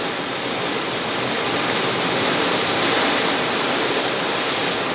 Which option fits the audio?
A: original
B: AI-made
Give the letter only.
A